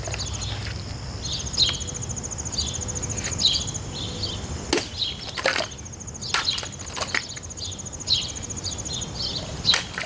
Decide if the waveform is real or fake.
real